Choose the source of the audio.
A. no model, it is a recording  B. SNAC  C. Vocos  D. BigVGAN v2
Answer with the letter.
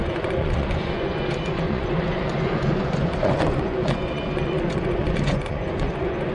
C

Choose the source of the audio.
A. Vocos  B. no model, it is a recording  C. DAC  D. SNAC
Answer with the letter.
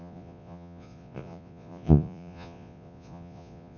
A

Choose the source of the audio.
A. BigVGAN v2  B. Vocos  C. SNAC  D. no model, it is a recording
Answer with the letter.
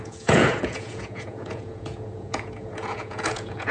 B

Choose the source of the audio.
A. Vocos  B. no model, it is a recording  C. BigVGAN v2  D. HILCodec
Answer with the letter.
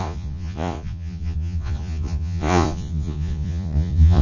A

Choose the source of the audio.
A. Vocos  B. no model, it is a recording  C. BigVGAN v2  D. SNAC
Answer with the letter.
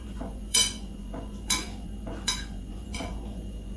A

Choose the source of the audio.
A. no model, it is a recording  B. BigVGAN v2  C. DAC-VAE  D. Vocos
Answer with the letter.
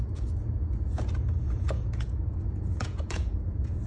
D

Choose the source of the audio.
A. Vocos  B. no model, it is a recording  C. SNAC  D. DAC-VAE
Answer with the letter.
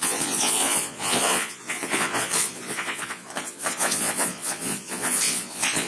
A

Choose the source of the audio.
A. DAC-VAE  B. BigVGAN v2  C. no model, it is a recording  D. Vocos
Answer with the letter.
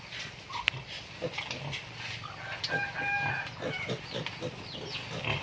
C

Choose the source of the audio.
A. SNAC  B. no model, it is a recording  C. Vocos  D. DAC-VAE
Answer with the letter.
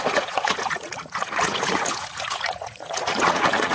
C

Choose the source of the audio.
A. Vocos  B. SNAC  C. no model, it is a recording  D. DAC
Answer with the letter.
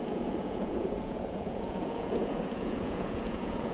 A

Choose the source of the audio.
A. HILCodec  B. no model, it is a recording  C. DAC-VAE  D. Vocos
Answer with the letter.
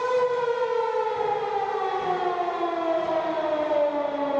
B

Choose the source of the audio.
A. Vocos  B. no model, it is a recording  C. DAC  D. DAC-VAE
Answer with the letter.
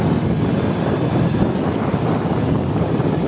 B